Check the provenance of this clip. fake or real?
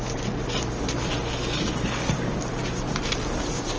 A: real